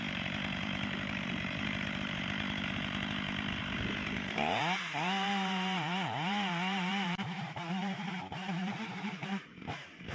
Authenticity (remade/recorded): remade